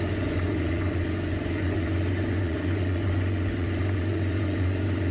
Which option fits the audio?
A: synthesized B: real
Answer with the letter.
A